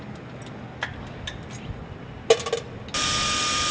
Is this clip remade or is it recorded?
recorded